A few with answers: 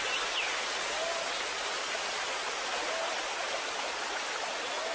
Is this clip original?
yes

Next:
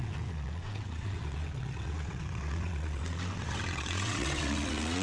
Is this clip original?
no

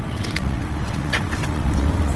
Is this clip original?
no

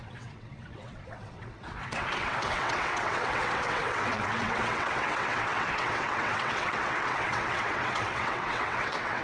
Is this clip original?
no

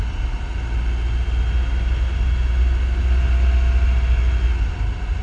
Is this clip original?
yes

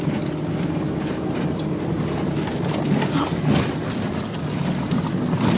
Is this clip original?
yes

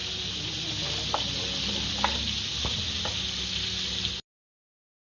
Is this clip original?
yes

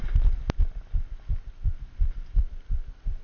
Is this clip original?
yes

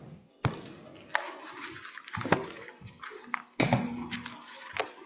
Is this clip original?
yes